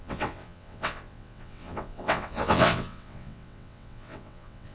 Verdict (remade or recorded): remade